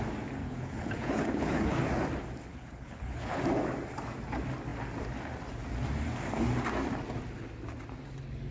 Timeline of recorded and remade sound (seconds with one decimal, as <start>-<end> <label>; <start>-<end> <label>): 0.0-0.4 recorded; 0.4-1.8 remade; 1.8-2.5 recorded; 2.5-3.4 remade; 3.4-8.5 recorded